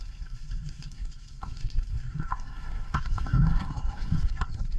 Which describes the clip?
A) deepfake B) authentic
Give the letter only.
A